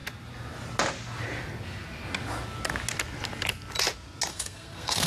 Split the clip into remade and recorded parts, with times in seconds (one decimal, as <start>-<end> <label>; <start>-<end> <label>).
0.0-4.3 recorded; 4.3-5.1 remade

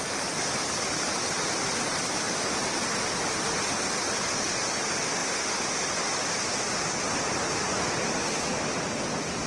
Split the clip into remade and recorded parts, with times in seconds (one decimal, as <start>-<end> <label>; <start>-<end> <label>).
0.0-9.5 recorded

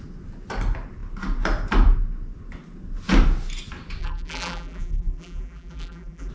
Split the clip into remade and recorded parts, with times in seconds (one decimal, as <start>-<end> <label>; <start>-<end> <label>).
0.0-4.0 recorded; 4.0-6.3 remade

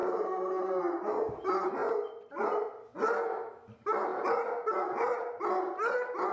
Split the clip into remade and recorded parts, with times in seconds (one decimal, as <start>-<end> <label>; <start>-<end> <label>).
0.0-0.8 remade; 0.8-6.3 recorded

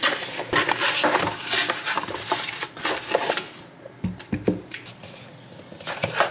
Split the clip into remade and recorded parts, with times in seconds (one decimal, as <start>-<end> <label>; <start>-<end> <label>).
0.0-6.3 recorded

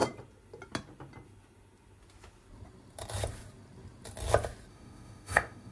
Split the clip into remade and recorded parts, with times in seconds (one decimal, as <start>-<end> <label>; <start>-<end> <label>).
0.0-4.7 recorded; 4.7-5.7 remade